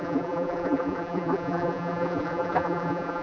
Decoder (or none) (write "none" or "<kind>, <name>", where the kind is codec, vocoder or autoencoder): vocoder, BigVGAN v2